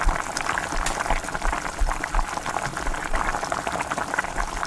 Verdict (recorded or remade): recorded